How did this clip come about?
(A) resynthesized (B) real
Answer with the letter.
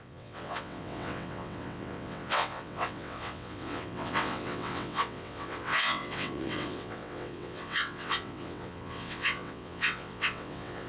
A